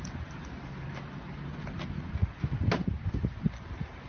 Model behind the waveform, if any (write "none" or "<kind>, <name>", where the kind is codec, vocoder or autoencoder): none